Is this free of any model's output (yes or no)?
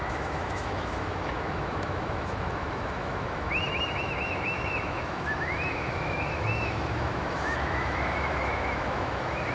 no